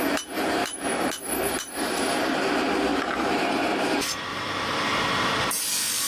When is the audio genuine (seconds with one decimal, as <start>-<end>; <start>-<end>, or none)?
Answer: 0.0-0.6; 2.3-4.3; 5.6-6.1